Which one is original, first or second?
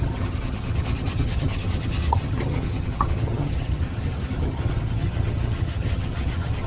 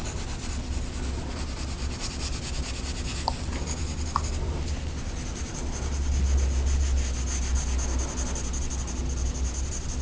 second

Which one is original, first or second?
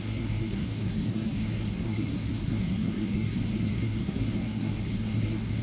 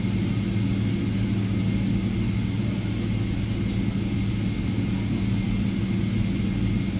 second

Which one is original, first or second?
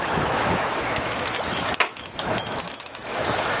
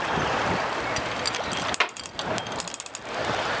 second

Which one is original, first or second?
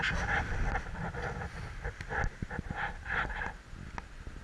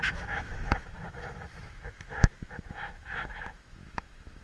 first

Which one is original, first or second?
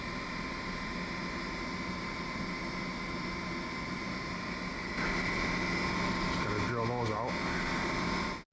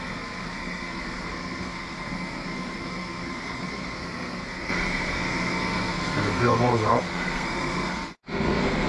first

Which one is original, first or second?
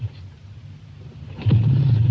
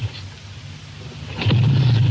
second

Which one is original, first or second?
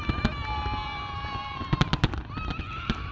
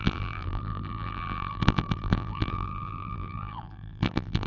first